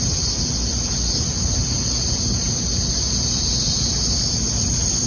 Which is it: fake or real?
real